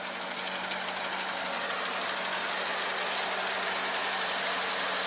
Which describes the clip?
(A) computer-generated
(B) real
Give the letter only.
B